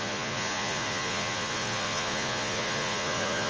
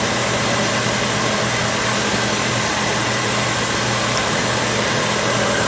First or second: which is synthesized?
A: first